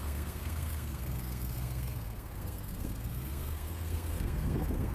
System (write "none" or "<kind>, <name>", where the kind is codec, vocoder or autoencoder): codec, SNAC